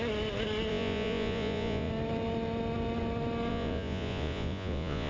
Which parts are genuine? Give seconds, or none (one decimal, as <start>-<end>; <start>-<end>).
0.0-0.7; 1.9-3.5